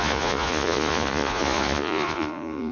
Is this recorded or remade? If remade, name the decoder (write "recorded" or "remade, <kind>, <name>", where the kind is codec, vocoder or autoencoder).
remade, vocoder, Vocos